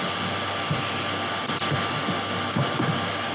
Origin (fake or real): real